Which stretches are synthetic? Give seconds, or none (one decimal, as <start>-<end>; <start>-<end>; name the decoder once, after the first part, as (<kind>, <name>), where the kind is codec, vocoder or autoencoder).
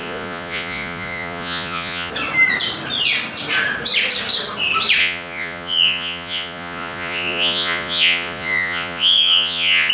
0.0-2.1 (vocoder, Vocos); 5.0-9.9